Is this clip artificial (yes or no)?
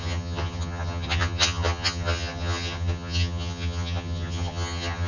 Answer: yes